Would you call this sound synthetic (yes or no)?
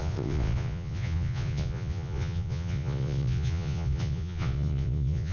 yes